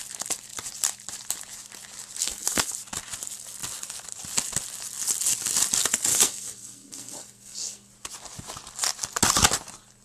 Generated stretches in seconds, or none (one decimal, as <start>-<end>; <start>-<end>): 2.2-2.7; 6.1-7.9